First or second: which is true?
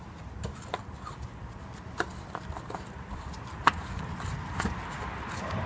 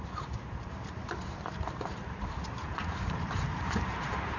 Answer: first